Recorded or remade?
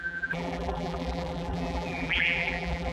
remade